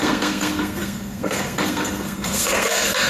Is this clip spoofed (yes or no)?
yes